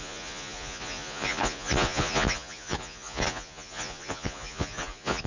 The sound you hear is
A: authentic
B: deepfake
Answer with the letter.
B